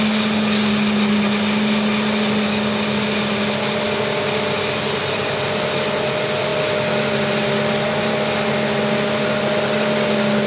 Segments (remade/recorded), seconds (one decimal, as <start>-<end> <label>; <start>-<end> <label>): 0.0-10.5 recorded